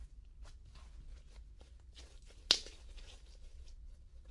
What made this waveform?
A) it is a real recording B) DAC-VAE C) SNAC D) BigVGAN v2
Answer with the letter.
A